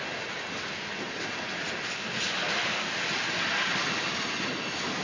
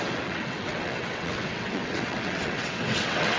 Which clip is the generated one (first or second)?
second